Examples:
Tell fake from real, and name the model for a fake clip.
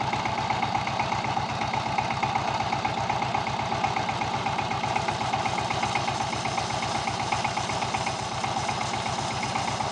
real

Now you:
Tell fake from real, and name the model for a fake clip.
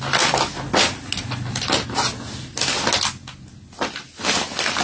real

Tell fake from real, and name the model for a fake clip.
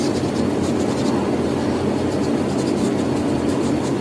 real